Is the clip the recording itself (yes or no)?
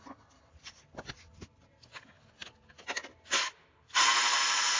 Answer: yes